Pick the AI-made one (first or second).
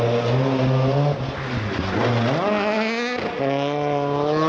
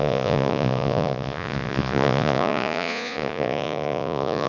second